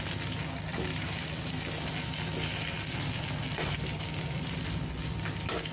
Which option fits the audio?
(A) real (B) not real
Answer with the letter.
A